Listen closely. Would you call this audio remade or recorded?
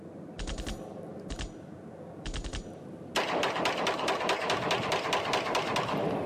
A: recorded